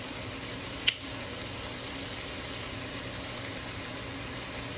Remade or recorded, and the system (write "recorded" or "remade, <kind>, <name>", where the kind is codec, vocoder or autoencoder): recorded